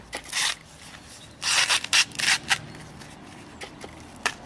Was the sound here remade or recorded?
recorded